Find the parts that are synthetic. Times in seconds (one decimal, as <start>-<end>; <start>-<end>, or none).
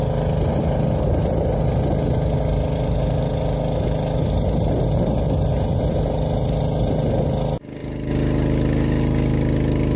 none